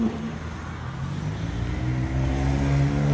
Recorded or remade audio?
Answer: recorded